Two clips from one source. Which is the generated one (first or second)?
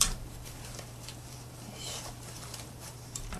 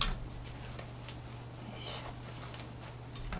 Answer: first